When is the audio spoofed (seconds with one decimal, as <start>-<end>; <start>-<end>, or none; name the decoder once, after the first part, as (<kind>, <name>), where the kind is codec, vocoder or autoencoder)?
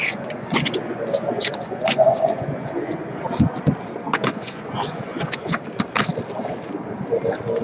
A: 0.0-3.2 (vocoder, Vocos); 4.1-5.6